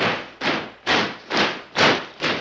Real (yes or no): yes